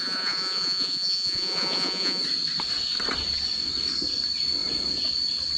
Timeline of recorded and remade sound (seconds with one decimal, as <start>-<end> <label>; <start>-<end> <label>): 0.0-2.2 remade; 2.2-5.6 recorded